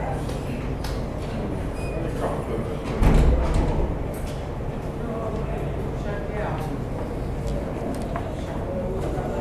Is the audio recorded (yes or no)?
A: yes